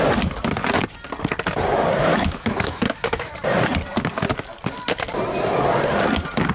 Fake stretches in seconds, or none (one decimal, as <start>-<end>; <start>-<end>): 2.1-3.3